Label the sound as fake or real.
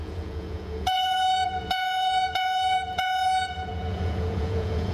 fake